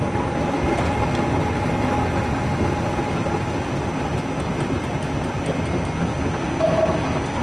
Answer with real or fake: real